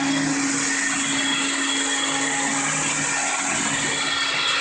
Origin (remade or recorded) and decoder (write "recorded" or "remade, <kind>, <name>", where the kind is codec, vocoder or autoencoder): recorded